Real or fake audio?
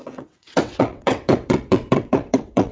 fake